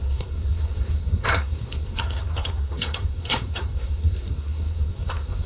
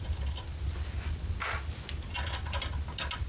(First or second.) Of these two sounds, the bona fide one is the second